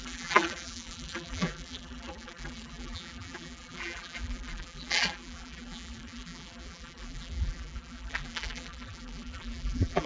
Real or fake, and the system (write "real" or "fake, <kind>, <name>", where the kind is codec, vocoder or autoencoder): fake, vocoder, BigVGAN v2